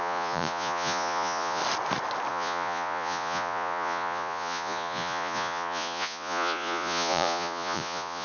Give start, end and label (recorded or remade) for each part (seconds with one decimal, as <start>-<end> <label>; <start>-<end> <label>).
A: 0.0-1.6 remade; 1.6-2.3 recorded; 2.3-8.2 remade